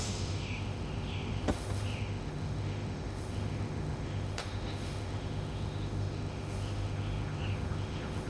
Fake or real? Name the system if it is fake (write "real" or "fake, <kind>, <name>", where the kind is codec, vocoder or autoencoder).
fake, autoencoder, DAC-VAE